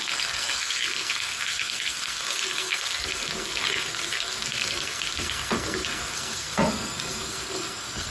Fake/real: fake